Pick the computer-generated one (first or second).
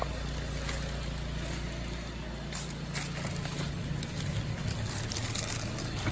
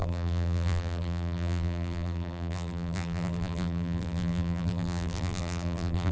second